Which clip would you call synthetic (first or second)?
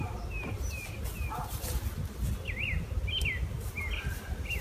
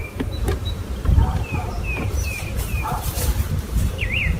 second